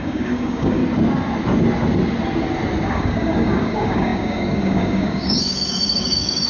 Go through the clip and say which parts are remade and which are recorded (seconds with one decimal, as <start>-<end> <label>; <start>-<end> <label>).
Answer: 0.0-0.8 remade; 0.8-2.9 recorded; 2.9-6.5 remade